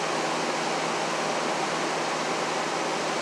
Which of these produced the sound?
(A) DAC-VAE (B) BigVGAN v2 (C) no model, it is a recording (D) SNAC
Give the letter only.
C